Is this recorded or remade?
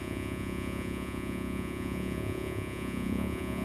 remade